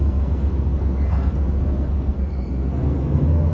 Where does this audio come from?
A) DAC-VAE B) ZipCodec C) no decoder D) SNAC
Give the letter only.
D